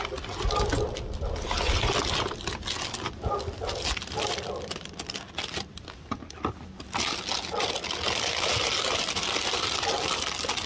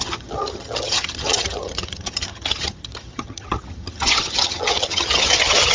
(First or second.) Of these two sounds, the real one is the first